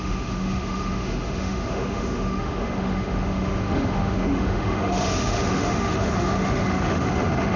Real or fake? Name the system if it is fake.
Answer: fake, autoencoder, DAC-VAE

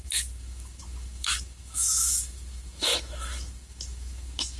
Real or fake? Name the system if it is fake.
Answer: fake, autoencoder, DAC-VAE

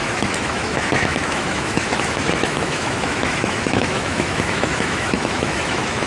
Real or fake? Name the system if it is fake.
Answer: fake, autoencoder, DAC-VAE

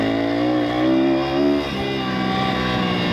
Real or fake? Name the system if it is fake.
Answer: real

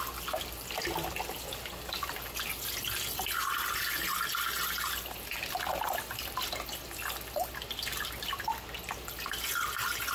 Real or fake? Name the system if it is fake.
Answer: real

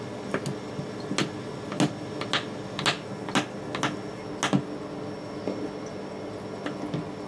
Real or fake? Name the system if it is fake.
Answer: real